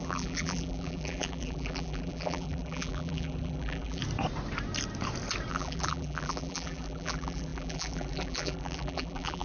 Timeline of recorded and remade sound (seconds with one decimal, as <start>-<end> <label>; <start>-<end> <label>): 0.0-4.0 remade; 4.0-5.5 recorded; 5.5-9.4 remade